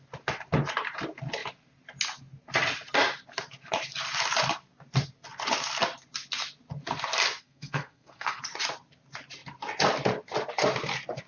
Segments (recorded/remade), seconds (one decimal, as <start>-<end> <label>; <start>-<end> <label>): 0.0-7.4 recorded; 7.4-8.4 remade; 8.4-11.3 recorded

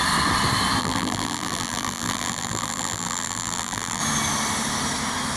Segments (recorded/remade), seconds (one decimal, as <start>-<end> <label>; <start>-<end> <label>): 0.0-0.8 recorded; 0.8-4.0 remade; 4.0-5.4 recorded

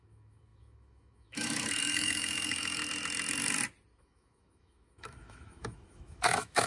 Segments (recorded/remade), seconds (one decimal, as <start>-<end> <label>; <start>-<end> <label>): 0.0-2.8 remade; 2.8-4.0 recorded; 4.0-6.7 remade